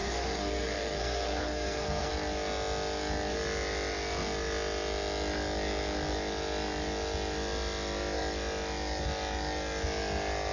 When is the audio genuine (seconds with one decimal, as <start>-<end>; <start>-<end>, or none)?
2.1-10.5